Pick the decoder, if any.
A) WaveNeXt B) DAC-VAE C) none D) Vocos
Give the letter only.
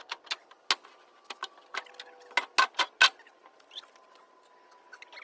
C